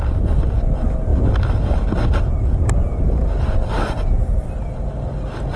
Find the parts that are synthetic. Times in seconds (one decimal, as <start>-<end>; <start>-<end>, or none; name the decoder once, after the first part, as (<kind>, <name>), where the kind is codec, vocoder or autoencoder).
none